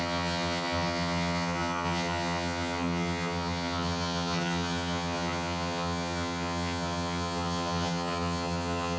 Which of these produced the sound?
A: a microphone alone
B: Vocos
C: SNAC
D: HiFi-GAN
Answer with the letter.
D